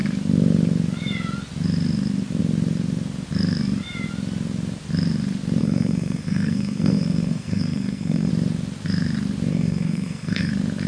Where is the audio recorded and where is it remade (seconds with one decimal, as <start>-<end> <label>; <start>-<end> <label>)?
0.0-5.6 recorded; 5.6-8.3 remade; 8.3-9.5 recorded; 9.5-10.5 remade; 10.5-10.9 recorded